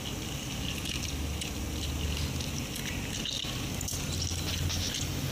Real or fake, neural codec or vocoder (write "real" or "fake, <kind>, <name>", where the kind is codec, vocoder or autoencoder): real